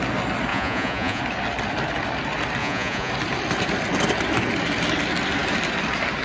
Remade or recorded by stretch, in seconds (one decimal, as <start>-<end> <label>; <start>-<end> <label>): 0.0-0.5 recorded; 0.5-1.2 remade; 1.2-2.6 recorded; 2.6-3.1 remade; 3.1-6.2 recorded